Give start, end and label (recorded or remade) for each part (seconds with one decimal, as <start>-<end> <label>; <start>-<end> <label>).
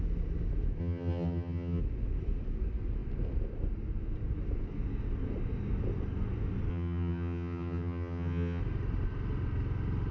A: 0.0-0.8 recorded; 0.8-1.8 remade; 1.8-6.7 recorded; 6.7-8.6 remade; 8.6-10.1 recorded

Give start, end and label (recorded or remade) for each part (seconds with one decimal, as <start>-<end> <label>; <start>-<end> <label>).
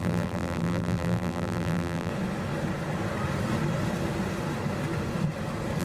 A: 0.0-2.1 remade; 2.1-5.8 recorded